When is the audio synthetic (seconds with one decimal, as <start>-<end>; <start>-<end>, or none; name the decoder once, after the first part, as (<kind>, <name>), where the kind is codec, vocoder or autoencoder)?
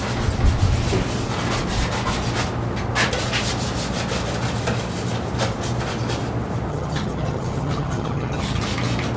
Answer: 6.7-8.6 (vocoder, HiFi-GAN)